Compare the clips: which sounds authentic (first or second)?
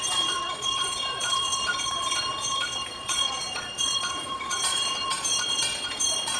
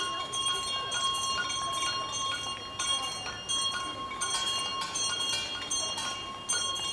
second